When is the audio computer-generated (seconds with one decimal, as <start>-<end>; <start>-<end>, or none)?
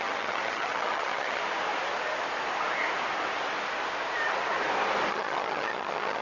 0.0-1.4; 5.1-6.2